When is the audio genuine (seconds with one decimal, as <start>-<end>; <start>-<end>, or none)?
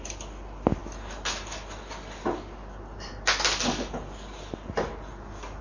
0.0-5.6